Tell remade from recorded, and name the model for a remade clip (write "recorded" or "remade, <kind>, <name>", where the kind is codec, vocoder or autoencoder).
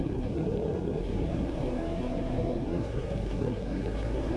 remade, codec, SNAC